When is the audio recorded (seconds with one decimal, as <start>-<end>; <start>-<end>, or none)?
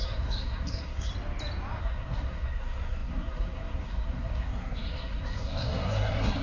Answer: 1.1-1.8